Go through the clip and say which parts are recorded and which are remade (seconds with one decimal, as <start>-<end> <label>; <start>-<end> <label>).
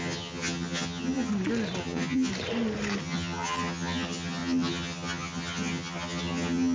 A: 0.0-1.3 remade; 1.3-1.8 recorded; 1.8-2.3 remade; 2.3-3.0 recorded; 3.0-6.7 remade